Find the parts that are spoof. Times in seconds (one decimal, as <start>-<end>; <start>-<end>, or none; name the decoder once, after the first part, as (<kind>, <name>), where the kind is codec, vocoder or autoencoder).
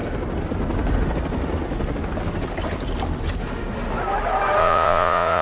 4.6-5.4 (vocoder, Vocos)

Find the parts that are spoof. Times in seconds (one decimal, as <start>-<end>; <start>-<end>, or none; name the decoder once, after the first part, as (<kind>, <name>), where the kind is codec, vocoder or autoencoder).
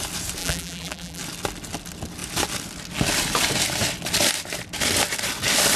0.4-1.2 (vocoder, BigVGAN v2)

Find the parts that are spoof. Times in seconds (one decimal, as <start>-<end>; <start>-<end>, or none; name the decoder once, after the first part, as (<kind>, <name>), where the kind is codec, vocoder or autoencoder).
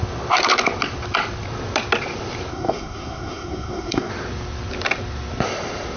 2.5-4.1 (codec, SNAC)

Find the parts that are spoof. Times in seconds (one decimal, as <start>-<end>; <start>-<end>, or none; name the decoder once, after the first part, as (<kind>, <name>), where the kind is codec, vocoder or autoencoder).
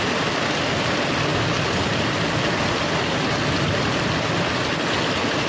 none